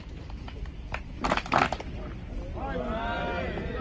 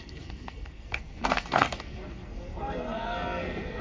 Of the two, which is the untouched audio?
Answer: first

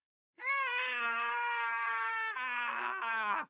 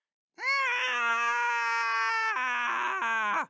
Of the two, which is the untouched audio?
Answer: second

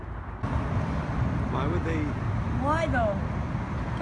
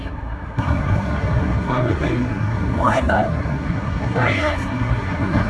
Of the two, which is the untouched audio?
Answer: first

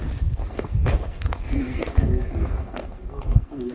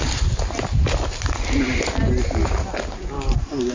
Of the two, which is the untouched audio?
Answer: second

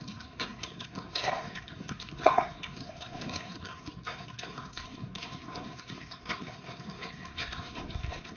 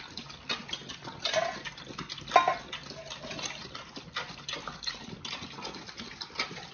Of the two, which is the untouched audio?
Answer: second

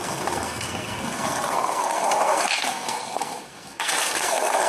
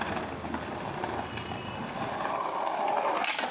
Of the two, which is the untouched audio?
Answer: second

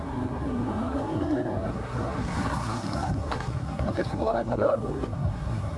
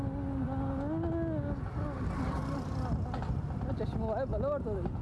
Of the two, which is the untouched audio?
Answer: second